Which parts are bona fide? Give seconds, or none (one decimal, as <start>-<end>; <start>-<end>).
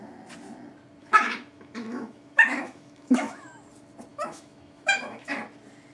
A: 0.0-1.0; 3.5-4.1; 5.4-5.9